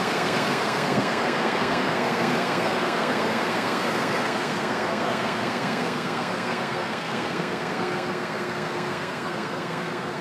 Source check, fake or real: fake